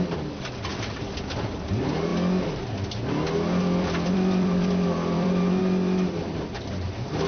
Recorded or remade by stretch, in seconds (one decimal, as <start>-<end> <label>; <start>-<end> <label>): 0.0-0.7 remade; 0.7-1.7 recorded; 1.7-2.1 remade; 2.1-3.6 recorded; 3.6-7.3 remade